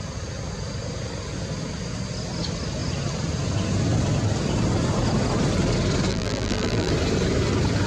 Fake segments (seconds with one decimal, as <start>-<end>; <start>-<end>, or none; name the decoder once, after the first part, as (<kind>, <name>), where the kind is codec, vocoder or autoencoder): 6.1-6.9 (vocoder, BigVGAN v2)